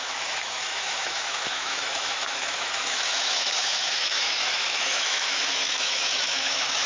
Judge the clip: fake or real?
fake